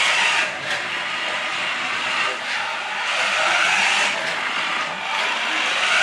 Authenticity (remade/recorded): recorded